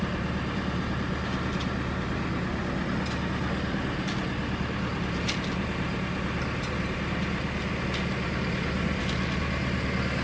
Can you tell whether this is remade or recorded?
recorded